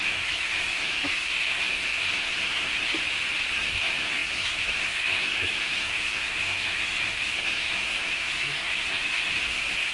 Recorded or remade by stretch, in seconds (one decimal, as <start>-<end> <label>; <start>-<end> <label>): 0.0-2.9 remade; 2.9-3.5 recorded; 3.5-9.9 remade